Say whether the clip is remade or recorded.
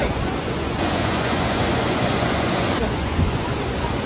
remade